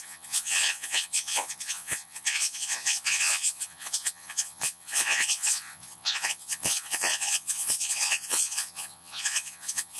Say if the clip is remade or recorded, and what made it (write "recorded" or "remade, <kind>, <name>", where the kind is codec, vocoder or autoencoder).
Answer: remade, vocoder, Vocos